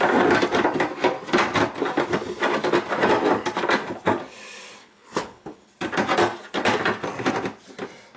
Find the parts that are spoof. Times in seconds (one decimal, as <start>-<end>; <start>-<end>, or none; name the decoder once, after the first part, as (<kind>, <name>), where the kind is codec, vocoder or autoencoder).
4.8-5.7 (codec, HILCodec)